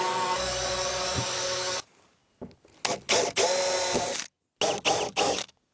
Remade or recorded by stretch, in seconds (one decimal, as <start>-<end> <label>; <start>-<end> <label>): 0.0-2.2 remade; 2.2-5.2 recorded; 5.2-5.7 remade